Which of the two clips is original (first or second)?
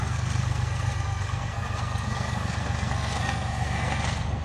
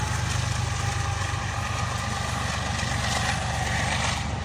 second